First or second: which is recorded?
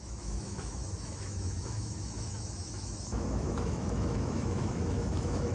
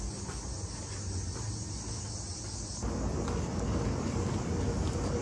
second